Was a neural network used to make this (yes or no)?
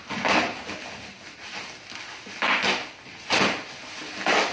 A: no